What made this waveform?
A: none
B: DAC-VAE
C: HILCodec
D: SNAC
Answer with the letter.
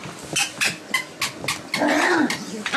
A